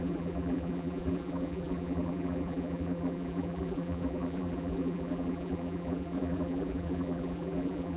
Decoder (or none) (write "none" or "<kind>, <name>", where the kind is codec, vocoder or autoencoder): vocoder, BigVGAN v2